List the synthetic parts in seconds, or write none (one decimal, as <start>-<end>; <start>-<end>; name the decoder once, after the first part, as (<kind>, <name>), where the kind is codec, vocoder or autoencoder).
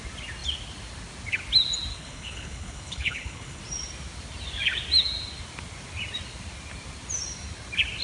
1.9-3.6 (codec, HILCodec)